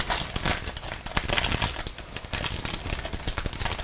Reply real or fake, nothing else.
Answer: real